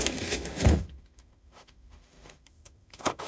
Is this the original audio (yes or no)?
no